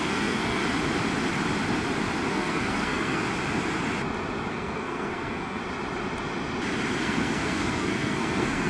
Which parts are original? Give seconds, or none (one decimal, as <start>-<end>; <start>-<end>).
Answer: 0.6-2.3; 3.2-4.5; 5.6-7.0